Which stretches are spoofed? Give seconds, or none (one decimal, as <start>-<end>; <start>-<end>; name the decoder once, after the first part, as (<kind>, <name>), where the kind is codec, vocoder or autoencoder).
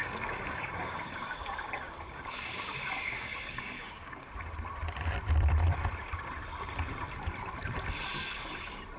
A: 0.0-4.3 (codec, DAC)